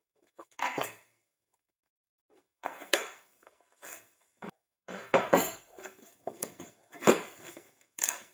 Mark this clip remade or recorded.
remade